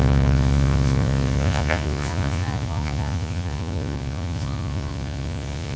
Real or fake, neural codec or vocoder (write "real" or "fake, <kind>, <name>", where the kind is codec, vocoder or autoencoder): fake, vocoder, Vocos